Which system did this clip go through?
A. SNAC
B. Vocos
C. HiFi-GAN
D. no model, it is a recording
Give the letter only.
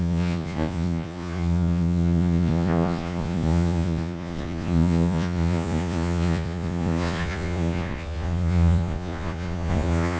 B